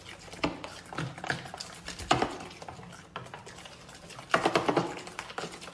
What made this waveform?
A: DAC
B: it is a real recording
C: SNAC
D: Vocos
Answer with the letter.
B